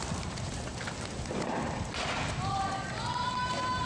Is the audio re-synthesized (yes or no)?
no